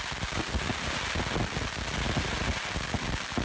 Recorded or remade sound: recorded